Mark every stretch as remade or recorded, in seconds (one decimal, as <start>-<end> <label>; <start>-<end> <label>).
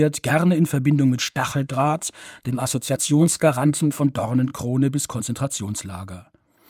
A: 0.0-1.2 recorded; 1.2-4.0 remade; 4.0-6.7 recorded